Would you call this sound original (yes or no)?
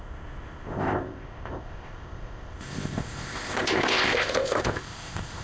no